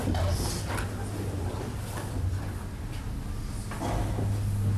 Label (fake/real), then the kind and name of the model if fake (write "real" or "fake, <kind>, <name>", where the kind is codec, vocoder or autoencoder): real